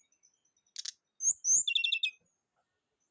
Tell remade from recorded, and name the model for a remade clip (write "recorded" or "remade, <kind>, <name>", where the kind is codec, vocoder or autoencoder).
recorded